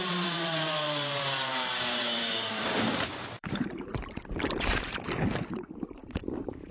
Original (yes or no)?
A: no